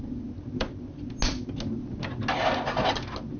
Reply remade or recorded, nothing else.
recorded